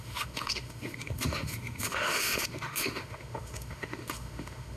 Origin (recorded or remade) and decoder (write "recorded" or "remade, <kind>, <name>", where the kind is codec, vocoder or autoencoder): remade, autoencoder, DAC-VAE